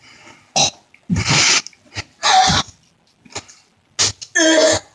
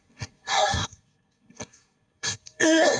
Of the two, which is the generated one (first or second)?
second